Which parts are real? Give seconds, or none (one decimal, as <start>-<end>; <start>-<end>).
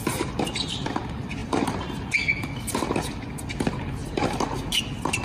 0.0-5.2